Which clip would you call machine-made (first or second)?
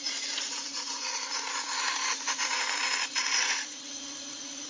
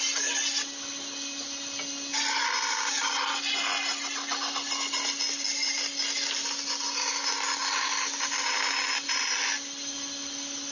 first